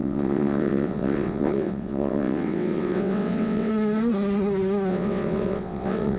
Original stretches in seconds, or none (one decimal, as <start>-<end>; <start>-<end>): 3.7-4.9